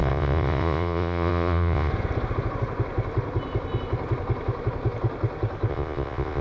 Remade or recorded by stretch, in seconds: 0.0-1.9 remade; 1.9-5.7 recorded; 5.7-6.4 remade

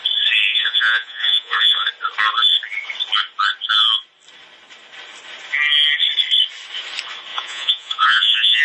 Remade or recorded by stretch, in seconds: 0.0-0.5 recorded; 0.5-1.9 remade; 1.9-7.3 recorded; 7.3-8.6 remade

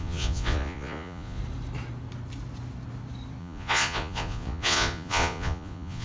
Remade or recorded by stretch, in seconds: 0.0-1.4 remade; 1.4-3.4 recorded; 3.4-6.0 remade

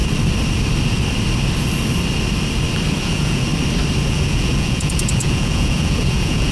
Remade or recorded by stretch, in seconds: 0.0-3.0 recorded; 3.0-3.5 remade; 3.5-4.1 recorded; 4.1-6.5 remade

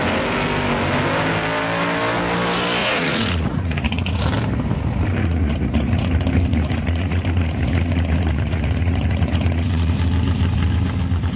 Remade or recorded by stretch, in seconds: 0.0-2.8 recorded; 2.8-4.2 remade; 4.2-5.2 recorded; 5.2-6.1 remade; 6.1-6.5 recorded; 6.5-9.9 remade; 9.9-11.4 recorded

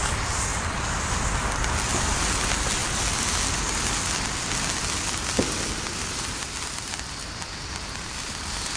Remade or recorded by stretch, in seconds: 0.0-8.8 recorded

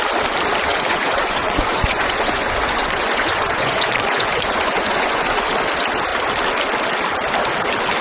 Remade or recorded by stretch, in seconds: 0.0-0.7 recorded; 0.7-5.5 remade; 5.5-8.0 recorded